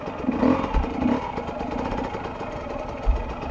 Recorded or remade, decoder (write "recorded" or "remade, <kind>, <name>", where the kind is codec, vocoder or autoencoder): recorded